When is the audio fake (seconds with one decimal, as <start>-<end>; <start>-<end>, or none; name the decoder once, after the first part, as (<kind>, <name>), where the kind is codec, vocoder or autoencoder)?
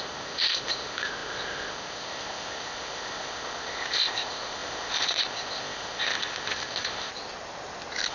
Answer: 0.0-7.1 (codec, ZipCodec)